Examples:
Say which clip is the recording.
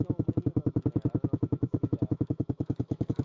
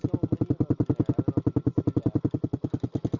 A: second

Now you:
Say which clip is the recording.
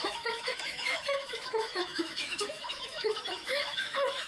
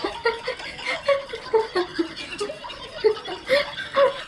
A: second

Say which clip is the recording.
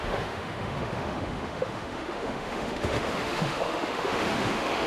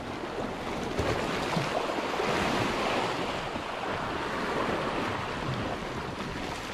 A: second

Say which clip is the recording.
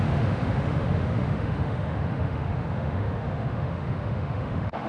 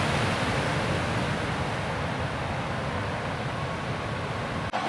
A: second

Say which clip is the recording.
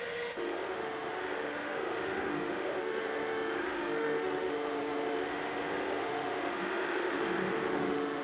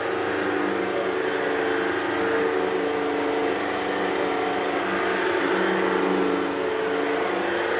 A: second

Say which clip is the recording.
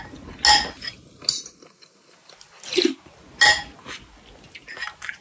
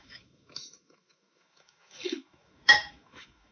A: first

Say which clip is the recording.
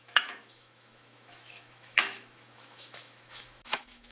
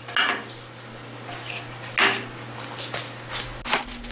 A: second